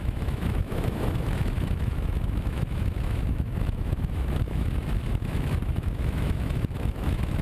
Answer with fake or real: fake